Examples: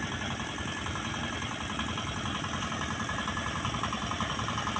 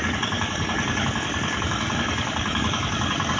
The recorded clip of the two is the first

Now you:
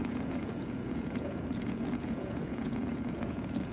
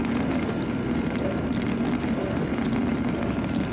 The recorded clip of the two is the second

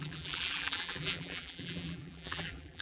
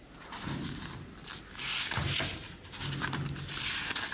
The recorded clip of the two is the second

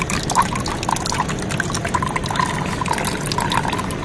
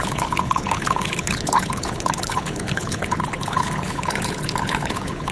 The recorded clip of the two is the first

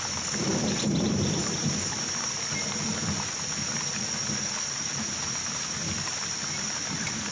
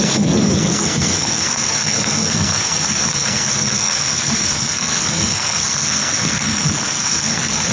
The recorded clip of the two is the first